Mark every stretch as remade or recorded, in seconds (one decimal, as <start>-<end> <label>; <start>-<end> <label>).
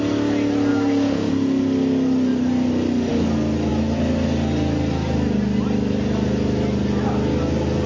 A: 0.0-0.7 recorded; 0.7-1.3 remade; 1.3-7.9 recorded